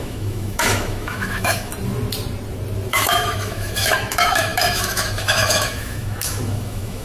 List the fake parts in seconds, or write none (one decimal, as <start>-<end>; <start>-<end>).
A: 0.0-1.7; 2.9-7.0